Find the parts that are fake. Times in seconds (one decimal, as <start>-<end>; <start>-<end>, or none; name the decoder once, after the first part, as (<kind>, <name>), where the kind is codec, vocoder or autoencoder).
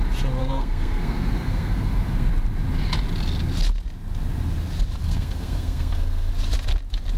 0.4-2.3 (codec, SNAC); 5.0-6.3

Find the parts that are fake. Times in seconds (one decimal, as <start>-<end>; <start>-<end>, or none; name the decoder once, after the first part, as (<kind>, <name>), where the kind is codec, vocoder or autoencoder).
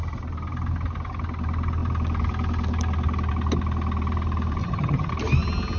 4.6-5.1 (vocoder, HiFi-GAN)